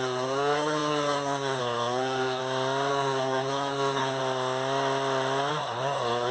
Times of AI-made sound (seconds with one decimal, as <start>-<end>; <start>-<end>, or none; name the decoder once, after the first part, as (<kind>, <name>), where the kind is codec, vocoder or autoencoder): 0.0-2.4 (codec, SNAC); 2.9-4.2; 5.5-6.3